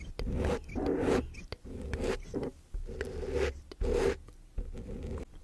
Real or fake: real